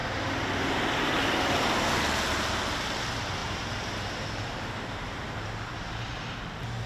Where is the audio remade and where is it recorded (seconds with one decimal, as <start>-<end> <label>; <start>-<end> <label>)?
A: 0.0-3.4 recorded; 3.4-5.8 remade; 5.8-6.9 recorded